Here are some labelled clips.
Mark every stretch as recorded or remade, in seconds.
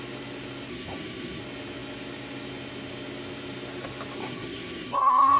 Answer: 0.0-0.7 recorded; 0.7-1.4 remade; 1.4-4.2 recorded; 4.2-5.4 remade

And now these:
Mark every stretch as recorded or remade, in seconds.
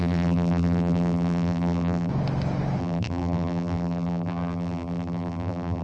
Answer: 0.0-2.1 remade; 2.1-2.8 recorded; 2.8-5.8 remade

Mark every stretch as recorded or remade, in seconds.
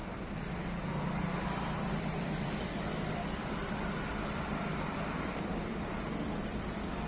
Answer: 0.0-3.6 remade; 3.6-4.1 recorded; 4.1-7.1 remade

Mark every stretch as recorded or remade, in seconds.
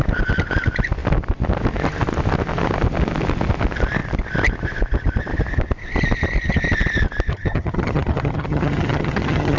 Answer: 0.0-7.3 recorded; 7.3-9.6 remade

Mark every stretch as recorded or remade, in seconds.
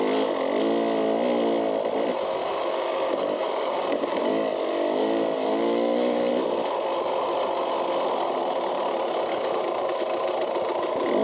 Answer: 0.0-2.4 recorded; 2.4-6.3 remade; 6.3-9.3 recorded; 9.3-10.0 remade; 10.0-11.2 recorded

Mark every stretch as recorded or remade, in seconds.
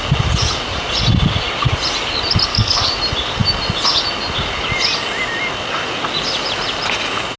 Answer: 0.0-2.5 recorded; 2.5-3.0 remade; 3.0-7.4 recorded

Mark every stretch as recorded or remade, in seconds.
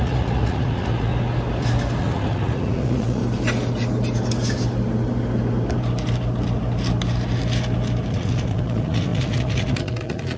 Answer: 0.0-1.1 remade; 1.1-2.0 recorded; 2.0-3.2 remade; 3.2-8.1 recorded; 8.1-10.4 remade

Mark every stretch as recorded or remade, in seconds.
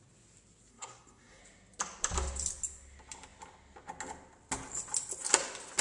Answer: 0.0-0.7 recorded; 0.7-1.4 remade; 1.4-5.8 recorded